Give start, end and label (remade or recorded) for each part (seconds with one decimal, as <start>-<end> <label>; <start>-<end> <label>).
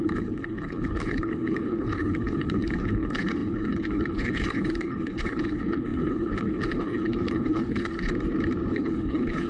0.0-8.1 remade; 8.1-8.7 recorded; 8.7-9.5 remade